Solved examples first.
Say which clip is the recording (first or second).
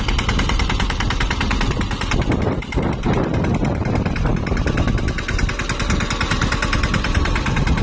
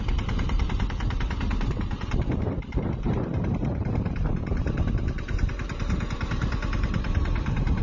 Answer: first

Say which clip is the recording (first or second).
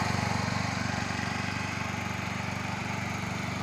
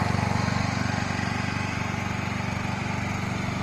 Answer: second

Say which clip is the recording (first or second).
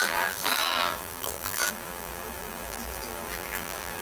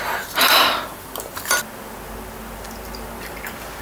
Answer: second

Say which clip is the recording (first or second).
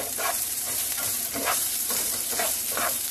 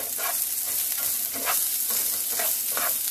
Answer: second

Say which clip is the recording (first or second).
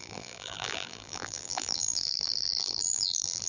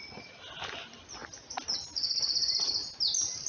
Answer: second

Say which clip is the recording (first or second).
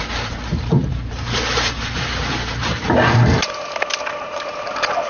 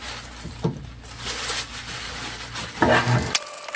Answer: second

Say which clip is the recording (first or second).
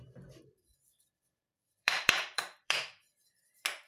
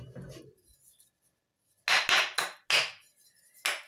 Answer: second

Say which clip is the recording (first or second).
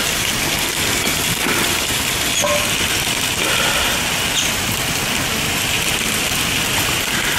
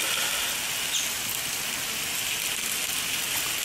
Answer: second